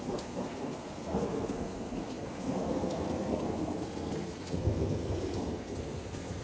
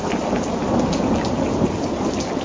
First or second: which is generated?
first